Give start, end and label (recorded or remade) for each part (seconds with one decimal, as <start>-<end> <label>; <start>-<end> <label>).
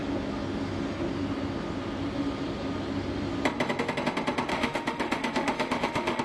0.0-4.5 recorded; 4.5-6.2 remade